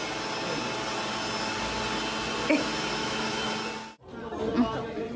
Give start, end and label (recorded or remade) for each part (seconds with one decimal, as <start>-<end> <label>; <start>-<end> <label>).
0.0-3.0 recorded; 3.0-3.5 remade; 3.5-5.2 recorded